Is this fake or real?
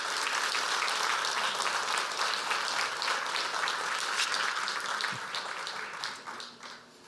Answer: real